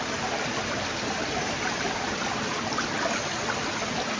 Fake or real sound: real